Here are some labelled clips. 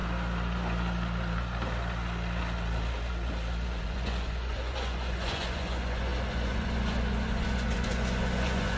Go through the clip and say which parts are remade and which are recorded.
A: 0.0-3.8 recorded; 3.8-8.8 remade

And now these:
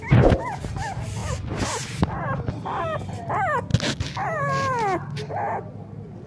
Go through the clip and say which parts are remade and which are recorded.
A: 0.0-6.3 recorded

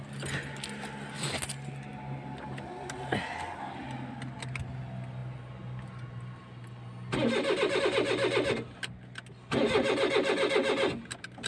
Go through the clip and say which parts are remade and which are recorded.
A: 0.0-11.5 recorded

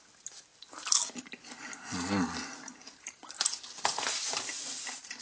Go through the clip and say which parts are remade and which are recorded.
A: 0.0-5.2 recorded

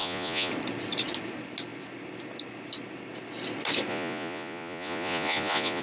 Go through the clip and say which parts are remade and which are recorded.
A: 0.0-0.5 remade; 0.5-3.9 recorded; 3.9-5.8 remade

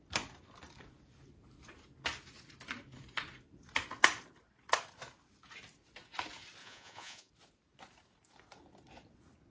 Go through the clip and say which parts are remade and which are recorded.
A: 0.0-6.6 recorded; 6.6-7.3 remade; 7.3-9.5 recorded

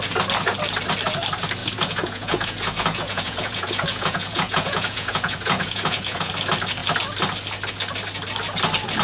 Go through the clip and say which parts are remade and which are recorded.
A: 0.0-1.6 recorded; 1.6-6.3 remade; 6.3-9.0 recorded